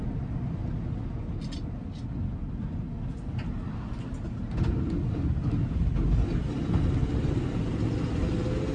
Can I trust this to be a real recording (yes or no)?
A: yes